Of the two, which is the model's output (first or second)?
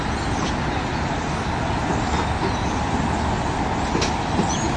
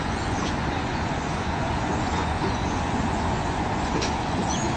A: second